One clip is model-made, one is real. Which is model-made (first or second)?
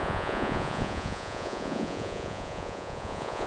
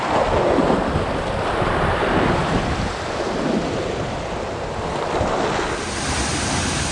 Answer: first